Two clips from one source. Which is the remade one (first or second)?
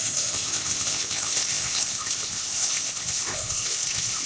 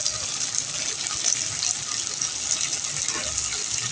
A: first